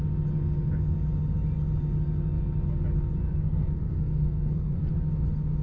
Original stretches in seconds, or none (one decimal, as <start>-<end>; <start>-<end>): 0.0-3.2; 4.9-5.6